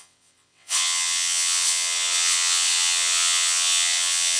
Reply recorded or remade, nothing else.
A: remade